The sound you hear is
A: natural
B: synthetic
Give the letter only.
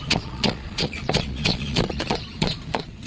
B